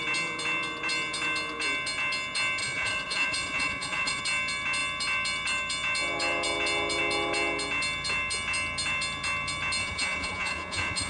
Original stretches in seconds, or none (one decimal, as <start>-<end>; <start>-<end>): 0.0-2.6; 4.2-9.8